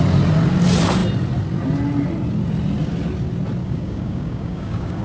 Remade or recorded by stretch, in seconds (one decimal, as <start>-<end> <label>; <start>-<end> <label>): 0.0-3.6 recorded; 3.6-5.0 remade